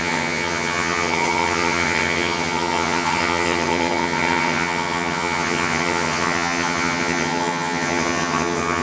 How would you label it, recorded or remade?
remade